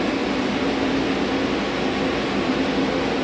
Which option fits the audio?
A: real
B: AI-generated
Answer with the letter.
A